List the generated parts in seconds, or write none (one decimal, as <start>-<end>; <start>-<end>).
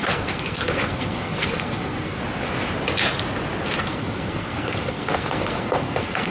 0.0-2.2; 3.8-6.3